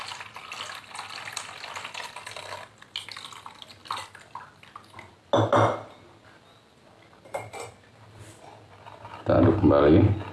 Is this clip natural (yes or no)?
yes